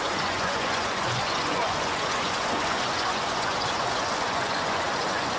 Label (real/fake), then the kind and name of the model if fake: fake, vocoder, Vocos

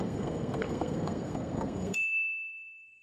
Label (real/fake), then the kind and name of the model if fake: fake, codec, SNAC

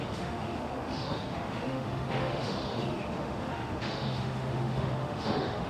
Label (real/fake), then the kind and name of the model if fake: fake, autoencoder, DAC-VAE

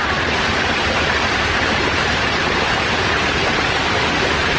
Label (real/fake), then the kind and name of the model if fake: fake, vocoder, BigVGAN v2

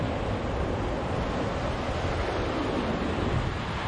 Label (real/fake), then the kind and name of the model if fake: real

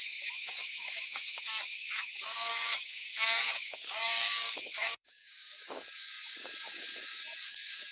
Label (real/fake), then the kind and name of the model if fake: fake, codec, DAC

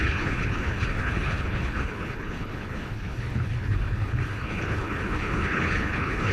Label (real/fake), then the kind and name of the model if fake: fake, codec, HILCodec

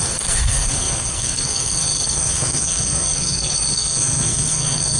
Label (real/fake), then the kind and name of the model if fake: fake, codec, SNAC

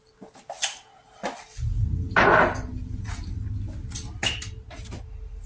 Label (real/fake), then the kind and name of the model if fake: real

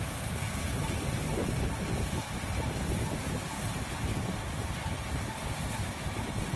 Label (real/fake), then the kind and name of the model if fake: real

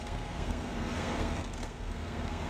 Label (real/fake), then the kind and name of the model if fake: fake, codec, SNAC